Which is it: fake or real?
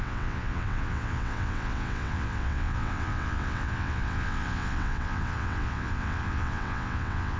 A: fake